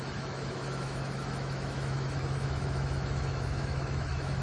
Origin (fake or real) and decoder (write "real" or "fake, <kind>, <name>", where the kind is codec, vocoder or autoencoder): fake, autoencoder, DAC-VAE